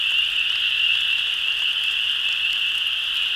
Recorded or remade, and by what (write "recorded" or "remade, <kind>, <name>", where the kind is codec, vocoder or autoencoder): recorded